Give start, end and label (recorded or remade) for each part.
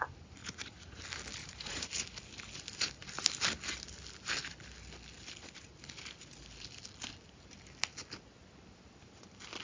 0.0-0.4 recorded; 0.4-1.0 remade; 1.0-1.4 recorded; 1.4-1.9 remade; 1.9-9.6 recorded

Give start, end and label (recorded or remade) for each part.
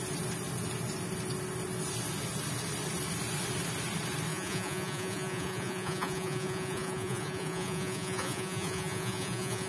0.0-4.3 recorded; 4.3-9.7 remade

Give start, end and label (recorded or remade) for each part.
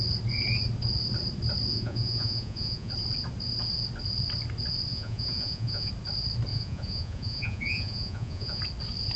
0.0-1.7 recorded; 1.7-2.9 remade; 2.9-4.9 recorded; 4.9-5.9 remade; 5.9-6.5 recorded; 6.5-8.6 remade; 8.6-9.2 recorded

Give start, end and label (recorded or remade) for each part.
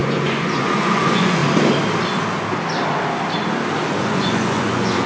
0.0-1.4 remade; 1.4-4.0 recorded; 4.0-5.1 remade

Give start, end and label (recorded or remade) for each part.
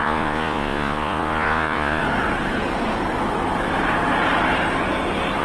0.0-2.0 remade; 2.0-5.4 recorded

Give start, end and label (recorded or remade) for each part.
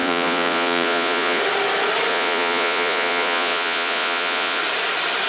0.0-1.4 remade; 1.4-2.1 recorded; 2.1-4.6 remade; 4.6-5.3 recorded